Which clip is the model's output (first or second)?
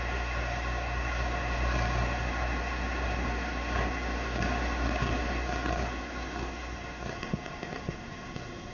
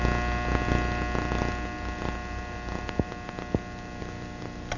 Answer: first